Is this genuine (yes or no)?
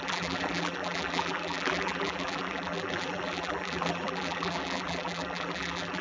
no